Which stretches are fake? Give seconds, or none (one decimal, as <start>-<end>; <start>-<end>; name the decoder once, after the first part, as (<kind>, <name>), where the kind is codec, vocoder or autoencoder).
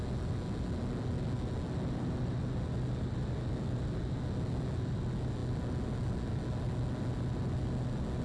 none